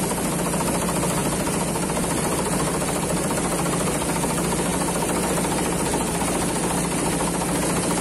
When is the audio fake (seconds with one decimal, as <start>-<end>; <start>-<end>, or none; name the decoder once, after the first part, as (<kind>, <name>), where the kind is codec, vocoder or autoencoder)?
1.2-3.3 (vocoder, BigVGAN v2); 4.7-6.2